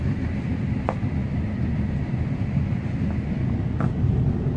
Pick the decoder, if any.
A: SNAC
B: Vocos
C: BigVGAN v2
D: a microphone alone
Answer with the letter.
D